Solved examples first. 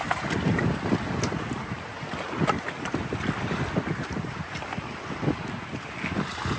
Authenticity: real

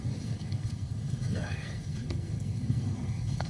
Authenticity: fake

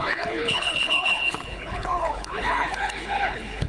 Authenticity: fake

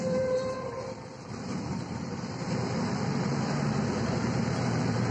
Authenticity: fake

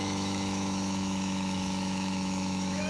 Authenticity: fake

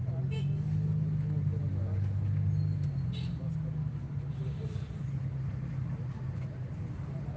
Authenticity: real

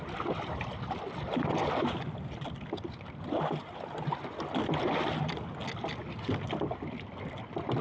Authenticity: real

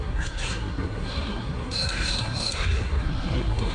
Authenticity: fake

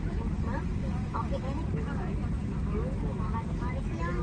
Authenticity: real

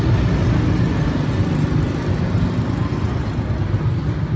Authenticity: real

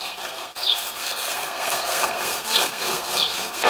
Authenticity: fake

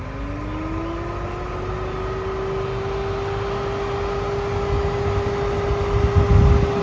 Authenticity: real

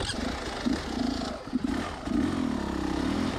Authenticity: real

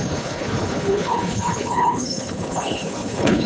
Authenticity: fake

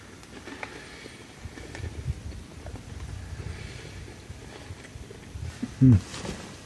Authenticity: real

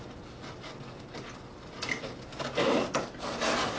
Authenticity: real